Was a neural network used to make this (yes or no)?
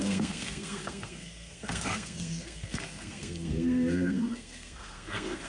yes